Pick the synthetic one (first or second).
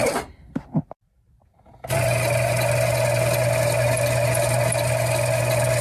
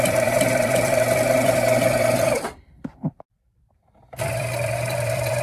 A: second